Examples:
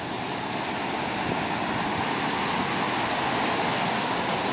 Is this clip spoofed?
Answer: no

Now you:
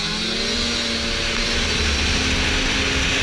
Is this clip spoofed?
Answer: no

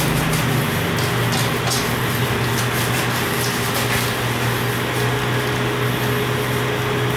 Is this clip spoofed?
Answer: no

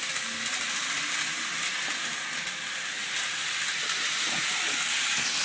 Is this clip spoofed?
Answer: no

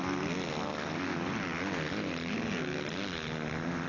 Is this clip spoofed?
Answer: no